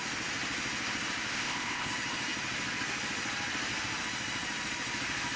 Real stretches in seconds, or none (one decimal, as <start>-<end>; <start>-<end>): 0.0-1.3; 1.9-5.4